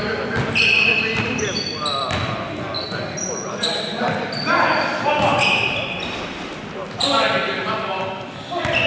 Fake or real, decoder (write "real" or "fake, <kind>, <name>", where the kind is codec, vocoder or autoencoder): real